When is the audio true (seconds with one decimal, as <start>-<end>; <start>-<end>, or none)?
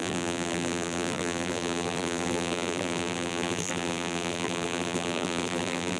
none